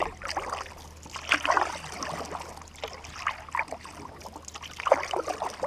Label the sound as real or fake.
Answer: real